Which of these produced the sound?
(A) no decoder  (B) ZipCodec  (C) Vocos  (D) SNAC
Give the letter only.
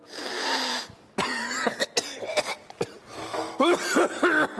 A